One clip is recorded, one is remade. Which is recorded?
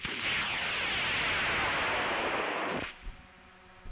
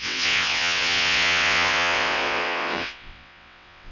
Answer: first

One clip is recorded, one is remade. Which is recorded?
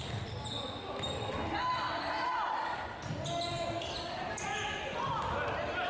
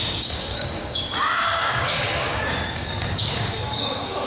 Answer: first